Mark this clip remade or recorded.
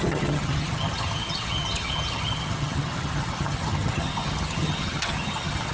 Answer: remade